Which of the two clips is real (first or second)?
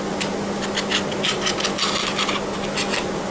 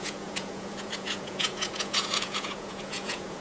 first